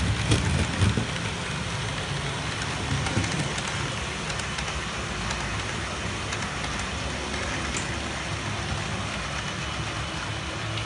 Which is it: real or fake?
real